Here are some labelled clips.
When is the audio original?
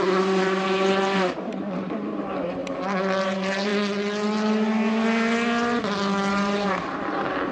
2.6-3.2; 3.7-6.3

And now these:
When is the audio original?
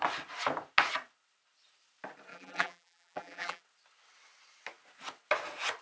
0.0-2.3; 3.6-5.8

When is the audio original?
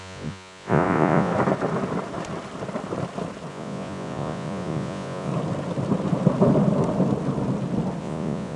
1.3-3.5; 5.3-8.0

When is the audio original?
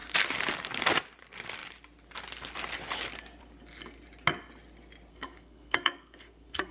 0.0-5.1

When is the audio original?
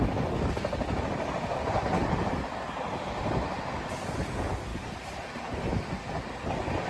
0.0-6.9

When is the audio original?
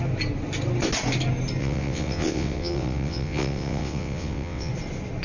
0.0-1.6; 4.7-5.2